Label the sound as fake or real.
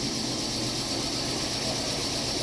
real